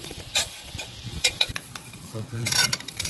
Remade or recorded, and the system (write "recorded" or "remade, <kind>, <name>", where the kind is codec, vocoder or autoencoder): remade, vocoder, Vocos